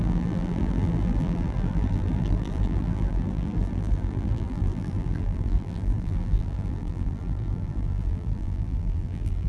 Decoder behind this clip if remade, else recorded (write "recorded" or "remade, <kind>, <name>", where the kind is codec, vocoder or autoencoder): remade, vocoder, BigVGAN v2